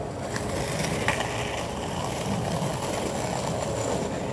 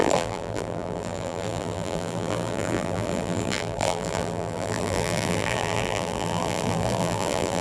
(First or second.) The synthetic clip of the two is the second